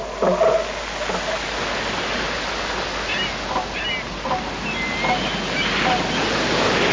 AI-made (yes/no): no